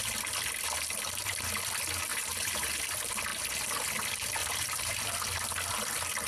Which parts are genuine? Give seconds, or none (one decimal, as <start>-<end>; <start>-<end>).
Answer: 0.0-2.1; 2.8-4.4; 5.0-6.3